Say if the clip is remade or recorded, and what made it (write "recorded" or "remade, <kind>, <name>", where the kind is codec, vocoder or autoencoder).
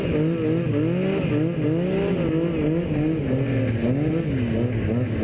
recorded